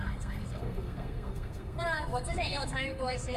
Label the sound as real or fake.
fake